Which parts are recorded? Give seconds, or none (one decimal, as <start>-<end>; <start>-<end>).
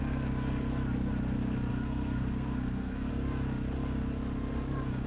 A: 0.0-1.7; 3.1-5.1